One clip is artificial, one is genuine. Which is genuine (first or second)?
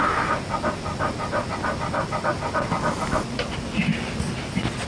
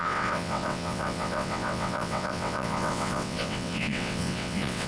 first